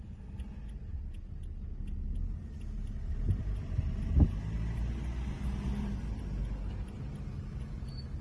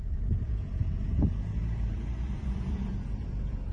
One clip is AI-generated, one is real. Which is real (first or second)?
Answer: first